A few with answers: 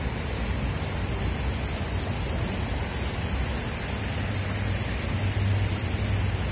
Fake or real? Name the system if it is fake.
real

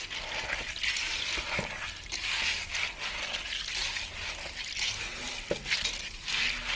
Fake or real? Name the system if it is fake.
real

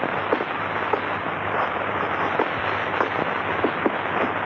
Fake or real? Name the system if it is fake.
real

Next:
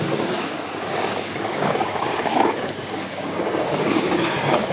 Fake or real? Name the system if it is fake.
fake, codec, DAC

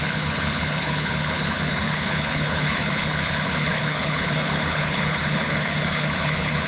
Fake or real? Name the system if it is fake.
fake, codec, HILCodec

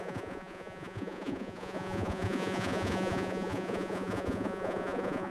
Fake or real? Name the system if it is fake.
fake, vocoder, Vocos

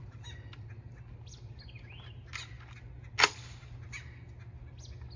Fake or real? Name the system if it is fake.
real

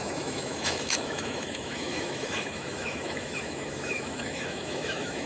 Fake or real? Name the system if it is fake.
fake, autoencoder, DAC-VAE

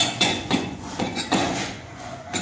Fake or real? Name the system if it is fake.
fake, vocoder, Vocos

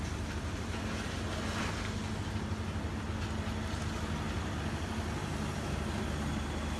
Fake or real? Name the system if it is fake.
real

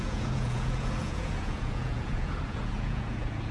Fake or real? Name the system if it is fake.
fake, vocoder, Vocos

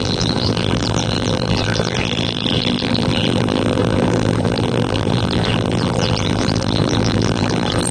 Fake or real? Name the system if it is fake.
fake, vocoder, BigVGAN v2